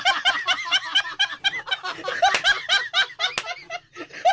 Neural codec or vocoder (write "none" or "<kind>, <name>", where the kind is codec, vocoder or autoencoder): none